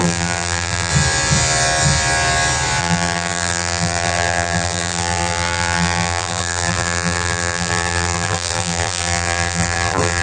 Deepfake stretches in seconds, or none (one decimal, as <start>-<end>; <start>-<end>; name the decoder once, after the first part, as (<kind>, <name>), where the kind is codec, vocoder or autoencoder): 0.0-0.9 (vocoder, BigVGAN v2); 2.8-10.2